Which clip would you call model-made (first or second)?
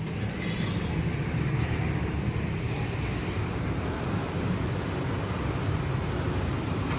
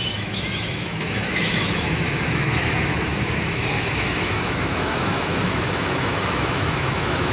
second